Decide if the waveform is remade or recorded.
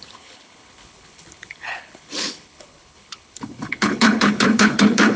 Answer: remade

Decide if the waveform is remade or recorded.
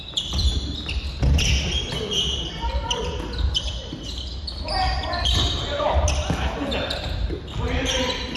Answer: recorded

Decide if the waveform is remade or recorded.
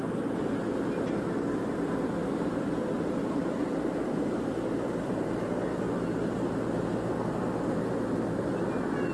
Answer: recorded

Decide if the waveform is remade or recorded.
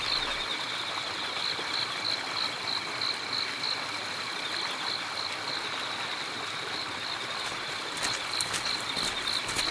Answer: recorded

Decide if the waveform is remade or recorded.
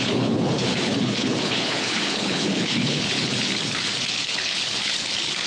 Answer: remade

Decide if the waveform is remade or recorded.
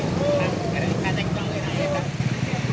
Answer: recorded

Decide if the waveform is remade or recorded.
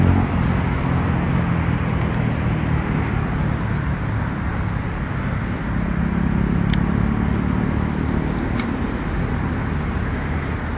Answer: recorded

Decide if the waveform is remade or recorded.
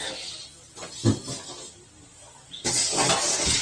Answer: recorded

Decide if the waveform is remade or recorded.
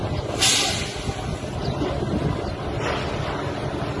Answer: recorded